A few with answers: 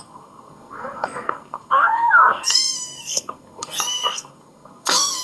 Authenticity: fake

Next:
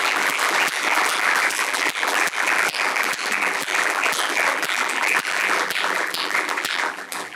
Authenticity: fake